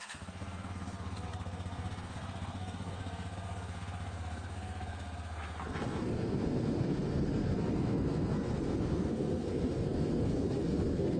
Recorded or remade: remade